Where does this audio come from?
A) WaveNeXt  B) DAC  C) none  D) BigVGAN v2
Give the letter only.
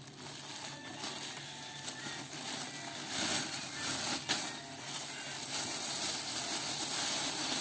C